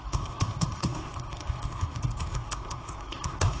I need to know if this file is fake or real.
fake